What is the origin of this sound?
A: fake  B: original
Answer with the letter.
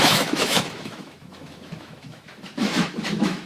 A